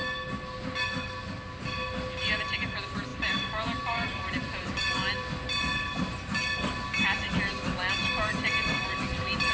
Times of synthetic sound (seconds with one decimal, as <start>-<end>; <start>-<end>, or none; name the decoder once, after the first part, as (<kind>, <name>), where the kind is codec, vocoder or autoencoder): 3.1-4.7 (vocoder, BigVGAN v2)